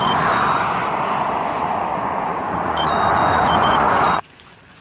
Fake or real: fake